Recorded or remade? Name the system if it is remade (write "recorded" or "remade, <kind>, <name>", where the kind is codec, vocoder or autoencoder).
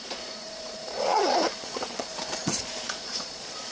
remade, vocoder, Vocos